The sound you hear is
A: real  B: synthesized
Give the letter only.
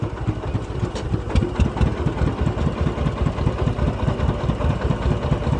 A